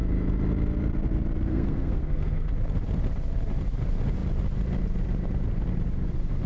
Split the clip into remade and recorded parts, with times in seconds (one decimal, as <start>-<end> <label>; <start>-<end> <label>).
0.0-1.5 recorded; 1.5-2.5 remade; 2.5-6.5 recorded